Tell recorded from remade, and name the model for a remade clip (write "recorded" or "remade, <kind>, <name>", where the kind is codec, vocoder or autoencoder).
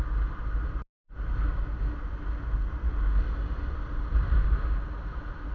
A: recorded